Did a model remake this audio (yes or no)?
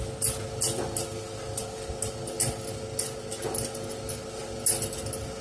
no